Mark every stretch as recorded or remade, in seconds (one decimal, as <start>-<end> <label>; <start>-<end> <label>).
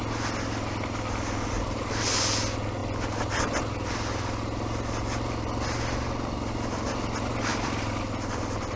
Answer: 0.0-7.5 recorded; 7.5-8.0 remade; 8.0-8.8 recorded